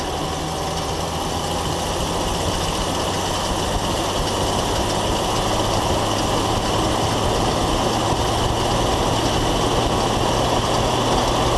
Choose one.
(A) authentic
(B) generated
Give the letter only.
A